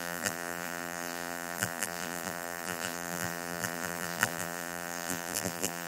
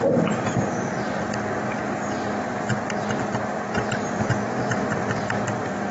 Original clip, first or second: second